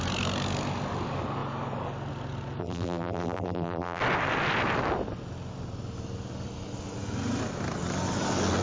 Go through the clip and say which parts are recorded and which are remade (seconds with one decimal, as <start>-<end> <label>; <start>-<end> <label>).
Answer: 0.0-2.6 recorded; 2.6-4.0 remade; 4.0-8.6 recorded